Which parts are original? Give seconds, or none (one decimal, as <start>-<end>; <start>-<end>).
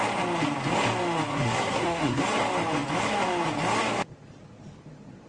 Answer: 0.0-1.3; 2.2-5.3